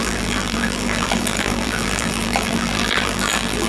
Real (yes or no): no